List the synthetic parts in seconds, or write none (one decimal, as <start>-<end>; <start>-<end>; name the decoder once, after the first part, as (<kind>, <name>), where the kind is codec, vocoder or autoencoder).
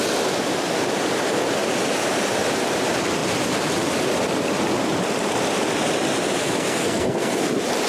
6.4-7.4 (codec, SNAC)